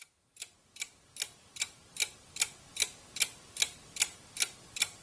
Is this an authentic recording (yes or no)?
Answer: yes